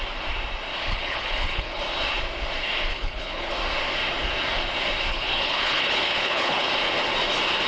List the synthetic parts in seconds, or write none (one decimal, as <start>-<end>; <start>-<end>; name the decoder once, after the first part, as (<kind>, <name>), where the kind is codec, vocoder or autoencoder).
0.9-1.8 (codec, HILCodec); 2.9-3.5; 5.1-6.7